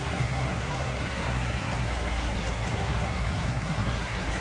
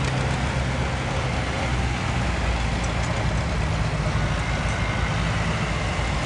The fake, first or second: first